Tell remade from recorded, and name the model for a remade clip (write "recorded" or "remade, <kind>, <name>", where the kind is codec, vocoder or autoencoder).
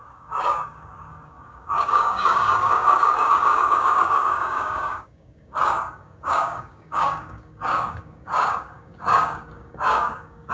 remade, codec, DAC